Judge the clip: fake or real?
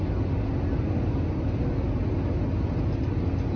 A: real